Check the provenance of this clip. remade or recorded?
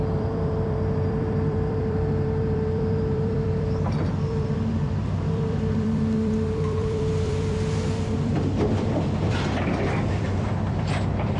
remade